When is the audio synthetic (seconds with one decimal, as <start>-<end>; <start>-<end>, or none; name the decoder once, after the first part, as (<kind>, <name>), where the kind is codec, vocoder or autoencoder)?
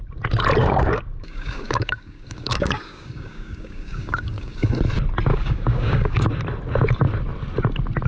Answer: 0.6-4.8 (codec, DAC); 5.3-6.3